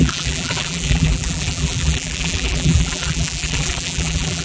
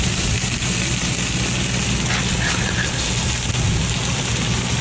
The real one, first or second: second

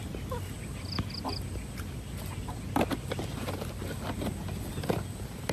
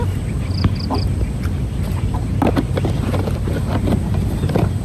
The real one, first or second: first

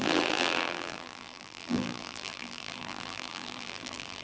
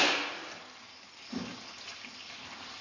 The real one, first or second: second